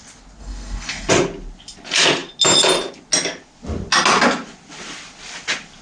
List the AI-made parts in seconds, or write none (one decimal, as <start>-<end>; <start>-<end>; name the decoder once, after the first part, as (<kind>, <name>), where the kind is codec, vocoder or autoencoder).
0.4-1.1 (codec, SNAC)